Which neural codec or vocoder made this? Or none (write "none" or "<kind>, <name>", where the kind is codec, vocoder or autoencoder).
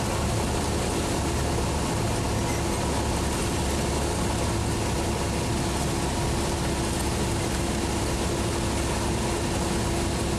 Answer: none